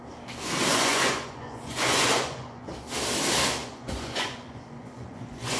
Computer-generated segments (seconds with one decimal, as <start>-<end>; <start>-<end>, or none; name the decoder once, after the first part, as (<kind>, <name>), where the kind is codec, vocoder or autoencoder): 0.7-2.7 (vocoder, Vocos); 3.6-5.6